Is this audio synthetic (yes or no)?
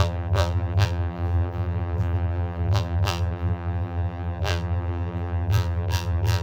yes